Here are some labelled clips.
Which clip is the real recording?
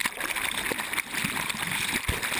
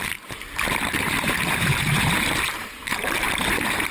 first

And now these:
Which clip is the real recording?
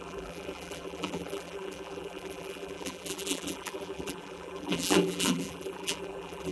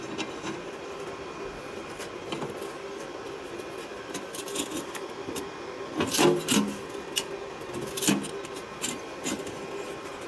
second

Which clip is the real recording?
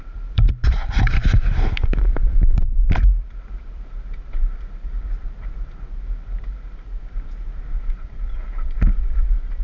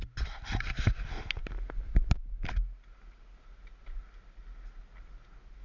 second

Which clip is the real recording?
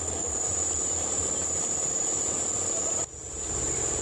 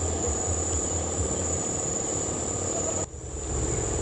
second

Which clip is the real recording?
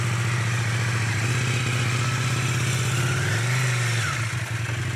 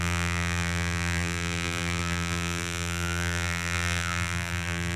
first